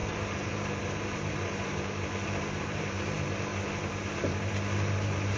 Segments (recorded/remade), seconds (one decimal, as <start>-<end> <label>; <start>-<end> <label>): 0.0-3.5 remade; 3.5-5.0 recorded; 5.0-5.4 remade